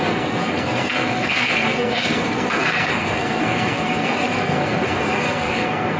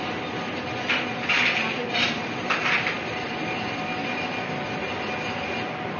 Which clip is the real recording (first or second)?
second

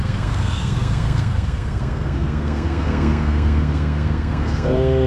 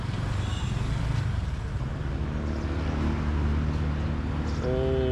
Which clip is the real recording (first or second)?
second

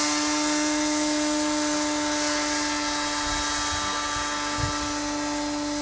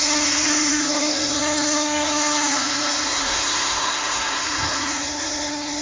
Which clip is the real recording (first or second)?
first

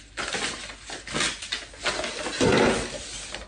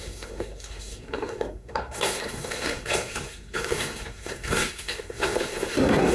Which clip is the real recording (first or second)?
first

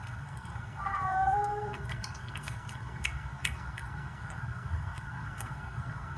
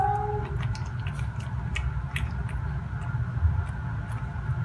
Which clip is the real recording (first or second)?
second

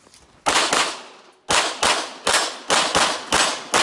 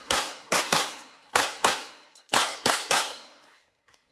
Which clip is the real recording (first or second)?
first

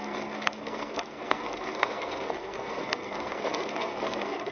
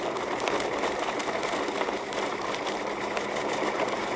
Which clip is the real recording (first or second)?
second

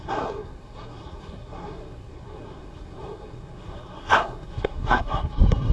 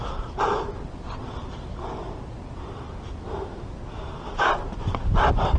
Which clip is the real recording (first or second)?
second